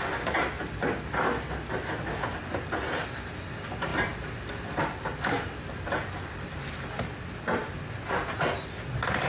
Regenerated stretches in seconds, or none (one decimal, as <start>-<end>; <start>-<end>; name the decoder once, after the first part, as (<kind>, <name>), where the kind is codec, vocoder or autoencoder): none

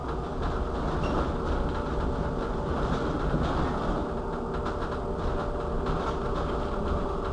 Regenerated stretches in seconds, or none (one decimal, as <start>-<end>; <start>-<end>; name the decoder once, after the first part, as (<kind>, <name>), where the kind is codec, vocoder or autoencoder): none

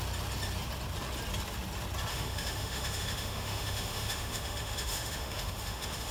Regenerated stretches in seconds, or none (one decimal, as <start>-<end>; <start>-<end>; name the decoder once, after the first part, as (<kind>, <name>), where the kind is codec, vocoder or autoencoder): 2.1-6.1 (autoencoder, DAC-VAE)

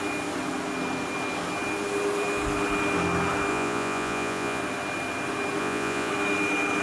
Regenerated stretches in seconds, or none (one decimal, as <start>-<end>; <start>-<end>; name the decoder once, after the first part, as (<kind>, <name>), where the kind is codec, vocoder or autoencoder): 3.5-4.6 (vocoder, Vocos); 5.6-6.1